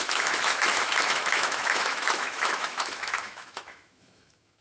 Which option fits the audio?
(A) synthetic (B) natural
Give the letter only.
A